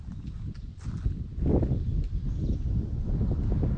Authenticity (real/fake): real